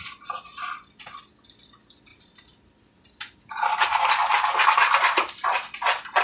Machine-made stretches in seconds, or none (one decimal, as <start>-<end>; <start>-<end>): 2.1-5.5

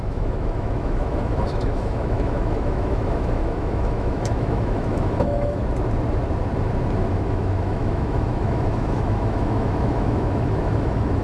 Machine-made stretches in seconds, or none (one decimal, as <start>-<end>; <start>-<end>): 0.0-5.6; 7.1-11.2